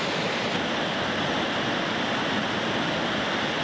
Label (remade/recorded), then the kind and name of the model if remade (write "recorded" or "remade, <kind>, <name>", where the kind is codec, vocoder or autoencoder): recorded